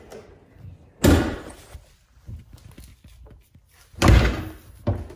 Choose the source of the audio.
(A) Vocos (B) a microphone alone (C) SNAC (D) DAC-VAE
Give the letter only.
B